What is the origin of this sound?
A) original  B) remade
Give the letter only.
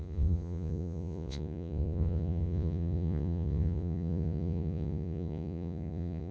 B